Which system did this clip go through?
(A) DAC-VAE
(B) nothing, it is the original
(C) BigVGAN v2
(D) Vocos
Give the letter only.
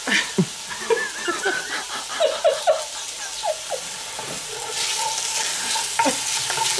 B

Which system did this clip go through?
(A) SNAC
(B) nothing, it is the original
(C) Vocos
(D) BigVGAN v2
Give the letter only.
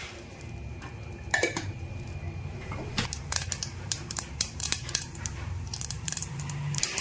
D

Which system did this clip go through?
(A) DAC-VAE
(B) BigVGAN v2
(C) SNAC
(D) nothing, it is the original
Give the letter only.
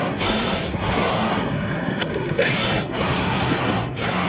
C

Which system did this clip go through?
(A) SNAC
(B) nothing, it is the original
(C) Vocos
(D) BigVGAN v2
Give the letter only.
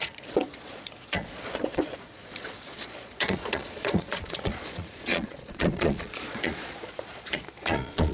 C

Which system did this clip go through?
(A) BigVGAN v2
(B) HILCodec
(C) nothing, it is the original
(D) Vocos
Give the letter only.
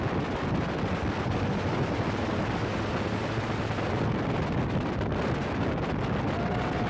C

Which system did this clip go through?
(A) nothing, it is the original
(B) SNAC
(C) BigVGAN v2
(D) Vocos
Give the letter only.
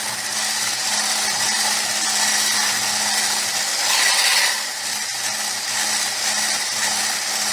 A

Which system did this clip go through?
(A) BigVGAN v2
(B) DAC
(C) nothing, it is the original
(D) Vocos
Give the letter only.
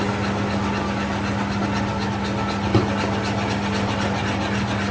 C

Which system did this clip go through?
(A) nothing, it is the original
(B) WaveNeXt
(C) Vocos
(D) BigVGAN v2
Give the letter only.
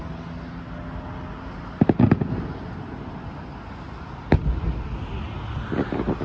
A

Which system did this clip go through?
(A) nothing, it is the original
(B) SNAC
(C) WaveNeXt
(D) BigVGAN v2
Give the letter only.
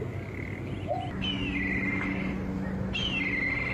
A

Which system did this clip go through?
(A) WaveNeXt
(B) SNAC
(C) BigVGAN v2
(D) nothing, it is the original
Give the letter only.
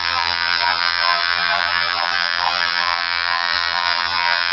C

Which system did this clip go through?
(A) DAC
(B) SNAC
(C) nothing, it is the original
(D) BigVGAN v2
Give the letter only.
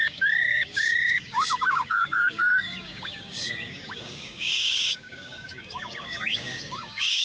A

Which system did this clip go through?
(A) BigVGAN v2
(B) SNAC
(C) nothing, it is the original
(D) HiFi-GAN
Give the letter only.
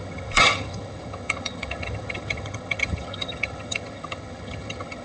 D